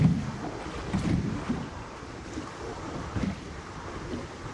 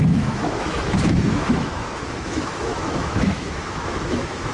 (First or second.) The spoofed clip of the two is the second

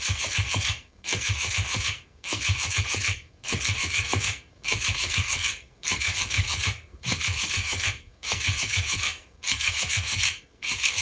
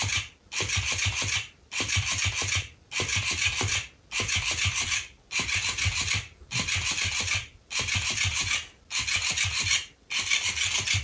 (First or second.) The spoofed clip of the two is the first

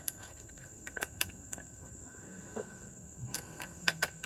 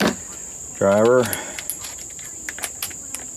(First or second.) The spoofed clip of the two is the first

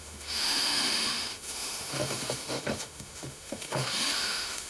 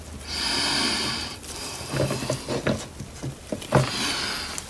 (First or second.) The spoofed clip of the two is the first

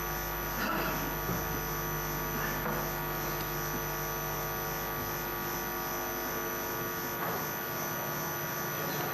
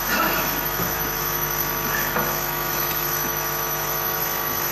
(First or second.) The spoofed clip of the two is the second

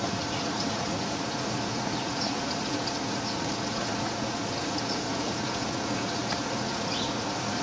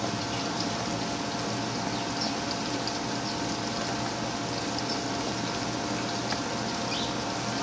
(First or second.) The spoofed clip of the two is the first